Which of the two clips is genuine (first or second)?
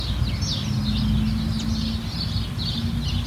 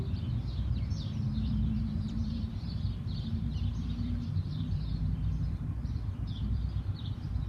first